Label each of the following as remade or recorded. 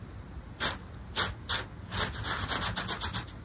recorded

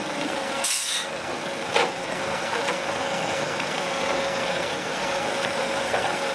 remade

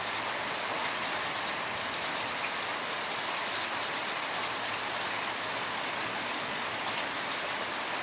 recorded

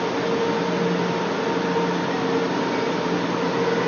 recorded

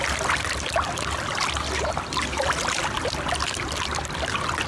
recorded